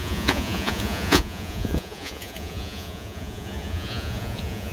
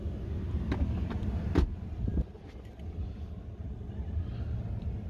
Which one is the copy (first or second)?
first